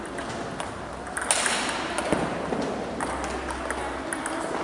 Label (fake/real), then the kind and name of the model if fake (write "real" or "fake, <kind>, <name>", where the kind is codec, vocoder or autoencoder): real